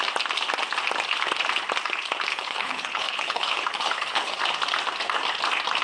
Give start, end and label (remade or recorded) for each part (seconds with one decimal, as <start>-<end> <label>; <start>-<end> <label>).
0.0-2.3 recorded; 2.3-4.4 remade; 4.4-5.8 recorded